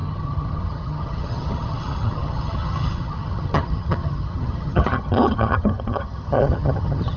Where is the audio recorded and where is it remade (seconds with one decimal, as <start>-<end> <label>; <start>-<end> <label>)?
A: 0.0-7.2 remade